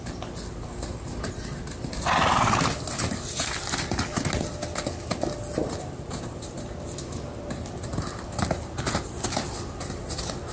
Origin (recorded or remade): recorded